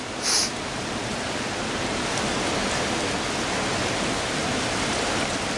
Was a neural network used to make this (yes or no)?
no